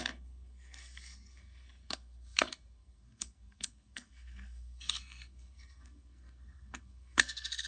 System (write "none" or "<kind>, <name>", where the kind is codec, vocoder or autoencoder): codec, SNAC